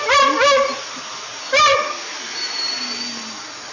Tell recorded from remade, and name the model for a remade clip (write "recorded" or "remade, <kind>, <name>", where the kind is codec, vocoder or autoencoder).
recorded